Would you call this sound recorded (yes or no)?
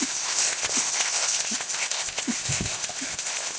no